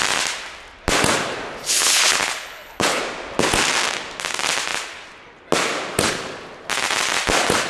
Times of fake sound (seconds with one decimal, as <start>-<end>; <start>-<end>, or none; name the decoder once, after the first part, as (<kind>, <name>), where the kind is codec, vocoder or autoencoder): 1.6-3.0 (codec, HILCodec)